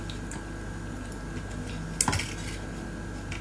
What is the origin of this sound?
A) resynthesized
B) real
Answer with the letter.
B